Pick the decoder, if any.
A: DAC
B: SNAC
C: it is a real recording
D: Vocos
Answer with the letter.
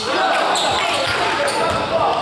C